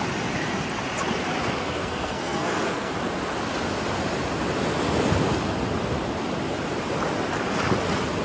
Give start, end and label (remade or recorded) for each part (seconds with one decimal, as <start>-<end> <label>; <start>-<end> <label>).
0.0-1.6 recorded; 1.6-2.9 remade; 2.9-8.2 recorded